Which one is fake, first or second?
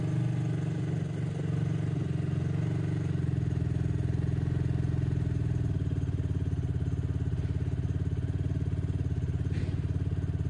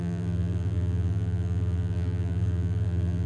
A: second